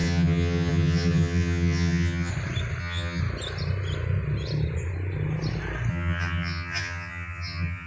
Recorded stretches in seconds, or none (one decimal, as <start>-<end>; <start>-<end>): 2.3-2.8; 3.2-5.9